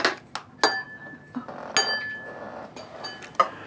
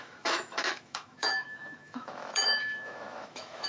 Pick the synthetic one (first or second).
second